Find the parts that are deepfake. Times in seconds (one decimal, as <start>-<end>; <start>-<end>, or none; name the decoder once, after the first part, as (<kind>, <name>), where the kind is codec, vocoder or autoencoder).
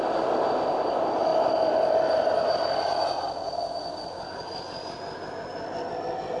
none